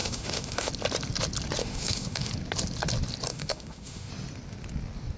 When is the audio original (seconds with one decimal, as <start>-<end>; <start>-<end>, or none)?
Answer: 0.7-1.6; 2.3-3.3; 4.1-5.2